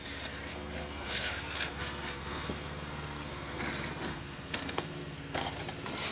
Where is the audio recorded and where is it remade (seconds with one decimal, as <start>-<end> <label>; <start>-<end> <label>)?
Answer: 0.0-0.5 recorded; 0.5-3.6 remade; 3.6-4.1 recorded; 4.1-5.6 remade; 5.6-6.1 recorded